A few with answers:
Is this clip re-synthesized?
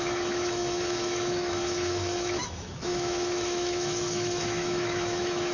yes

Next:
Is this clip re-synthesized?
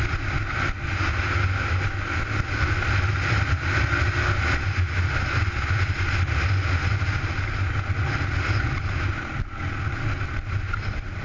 no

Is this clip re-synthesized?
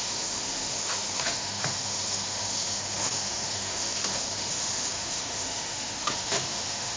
yes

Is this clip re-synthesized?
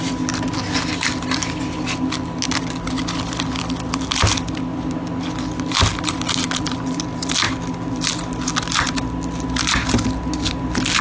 no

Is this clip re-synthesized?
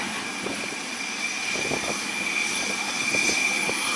no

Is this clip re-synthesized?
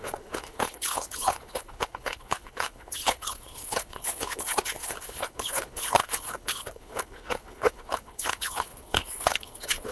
yes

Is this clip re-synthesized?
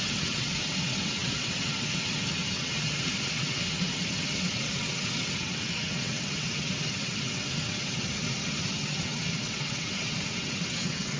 yes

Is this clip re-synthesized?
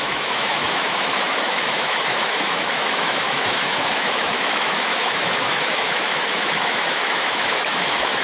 yes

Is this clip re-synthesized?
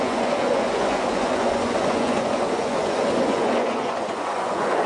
yes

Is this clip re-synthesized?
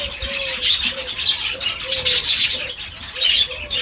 no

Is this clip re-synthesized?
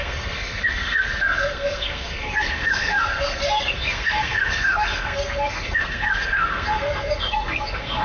yes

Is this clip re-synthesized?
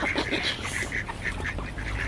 yes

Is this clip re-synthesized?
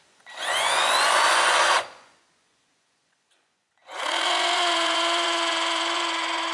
yes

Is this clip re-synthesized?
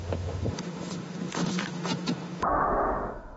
yes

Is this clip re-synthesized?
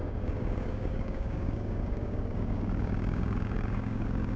yes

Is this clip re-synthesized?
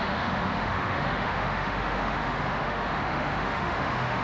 yes